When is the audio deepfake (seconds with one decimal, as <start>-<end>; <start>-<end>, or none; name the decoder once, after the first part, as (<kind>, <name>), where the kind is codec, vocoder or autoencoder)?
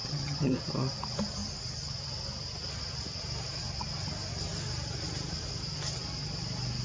0.0-0.6 (vocoder, HiFi-GAN)